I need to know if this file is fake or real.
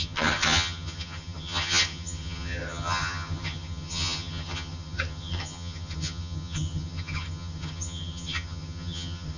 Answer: fake